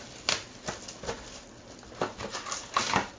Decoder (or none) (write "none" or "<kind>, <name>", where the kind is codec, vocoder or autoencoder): none